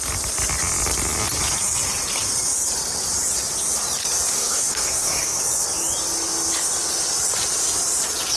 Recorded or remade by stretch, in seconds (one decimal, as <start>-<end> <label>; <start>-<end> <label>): 0.0-4.3 recorded; 4.3-5.4 remade; 5.4-8.4 recorded